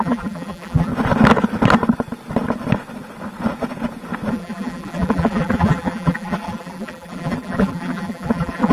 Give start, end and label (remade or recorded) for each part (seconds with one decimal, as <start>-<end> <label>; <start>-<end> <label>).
0.0-0.9 remade; 0.9-4.3 recorded; 4.3-8.7 remade